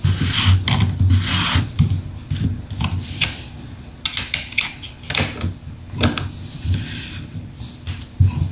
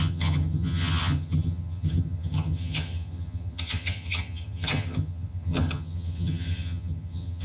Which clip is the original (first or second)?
first